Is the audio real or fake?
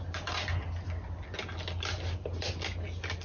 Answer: real